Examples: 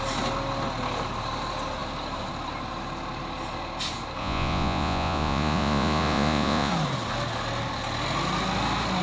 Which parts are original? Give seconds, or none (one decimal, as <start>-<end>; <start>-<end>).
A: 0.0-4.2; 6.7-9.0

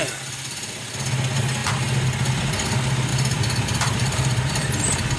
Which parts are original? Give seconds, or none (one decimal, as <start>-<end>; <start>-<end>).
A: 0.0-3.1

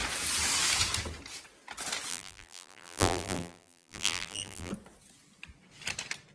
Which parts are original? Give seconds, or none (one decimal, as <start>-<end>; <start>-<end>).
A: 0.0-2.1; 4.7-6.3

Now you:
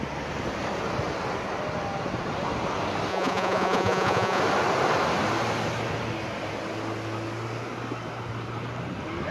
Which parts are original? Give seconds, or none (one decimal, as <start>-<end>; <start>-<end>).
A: 0.0-3.1; 4.4-9.3

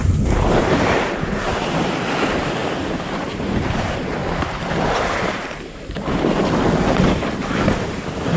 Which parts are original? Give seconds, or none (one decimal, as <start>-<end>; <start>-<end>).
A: 0.0-0.6; 4.2-4.9